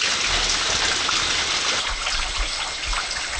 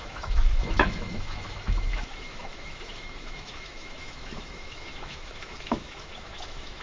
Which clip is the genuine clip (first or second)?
first